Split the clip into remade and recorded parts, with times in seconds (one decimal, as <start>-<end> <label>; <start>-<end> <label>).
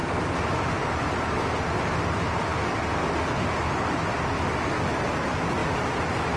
0.0-5.6 recorded; 5.6-6.4 remade